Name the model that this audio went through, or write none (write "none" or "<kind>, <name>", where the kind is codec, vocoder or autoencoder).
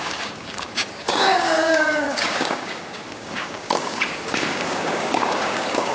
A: codec, DAC